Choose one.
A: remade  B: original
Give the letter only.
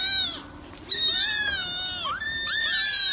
B